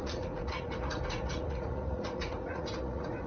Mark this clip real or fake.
fake